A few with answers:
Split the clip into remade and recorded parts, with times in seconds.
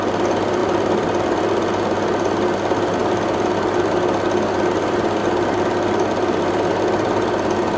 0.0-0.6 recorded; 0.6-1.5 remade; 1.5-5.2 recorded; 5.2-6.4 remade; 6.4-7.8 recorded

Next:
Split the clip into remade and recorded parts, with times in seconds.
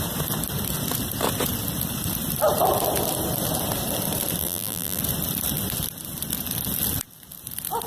0.0-4.4 recorded; 4.4-5.0 remade; 5.0-7.9 recorded